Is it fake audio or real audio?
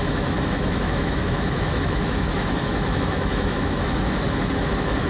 fake